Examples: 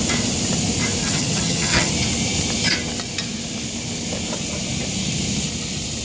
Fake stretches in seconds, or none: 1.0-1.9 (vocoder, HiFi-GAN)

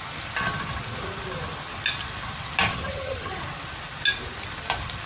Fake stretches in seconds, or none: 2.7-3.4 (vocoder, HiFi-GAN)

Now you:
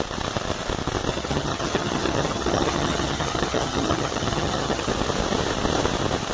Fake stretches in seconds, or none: 1.1-4.9 (vocoder, HiFi-GAN)

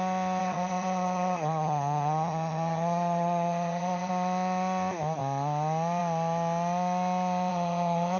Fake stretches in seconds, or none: 0.4-4.1 (vocoder, HiFi-GAN); 7.5-8.2

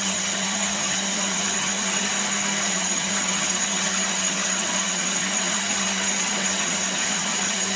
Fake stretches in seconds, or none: 0.0-2.1 (vocoder, HiFi-GAN); 2.7-7.8

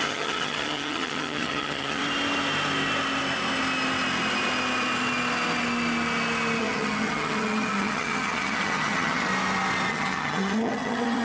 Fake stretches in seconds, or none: 0.0-2.0 (vocoder, HiFi-GAN); 6.6-9.3; 9.9-11.2

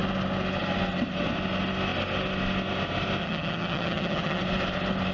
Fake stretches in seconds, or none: 3.2-4.4 (vocoder, HiFi-GAN)

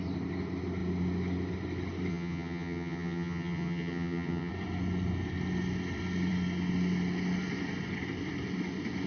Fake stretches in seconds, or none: 2.1-4.5 (vocoder, HiFi-GAN)